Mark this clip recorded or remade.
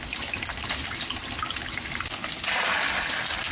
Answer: recorded